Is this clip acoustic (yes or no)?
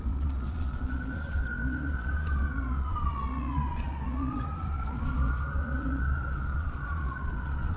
no